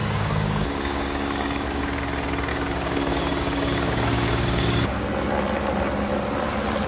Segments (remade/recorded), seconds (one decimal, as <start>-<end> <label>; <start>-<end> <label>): 0.0-1.8 remade; 1.8-2.5 recorded; 2.5-5.0 remade; 5.0-6.9 recorded